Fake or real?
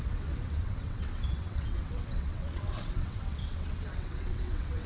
fake